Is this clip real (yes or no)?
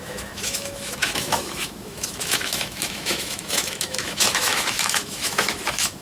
no